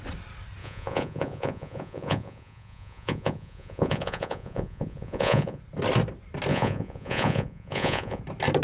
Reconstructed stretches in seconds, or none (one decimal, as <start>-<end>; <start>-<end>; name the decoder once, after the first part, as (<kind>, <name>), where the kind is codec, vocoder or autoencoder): 0.6-5.6 (vocoder, Vocos); 6.5-8.2